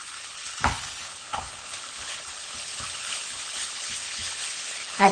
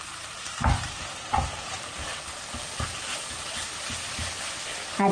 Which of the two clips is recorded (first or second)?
second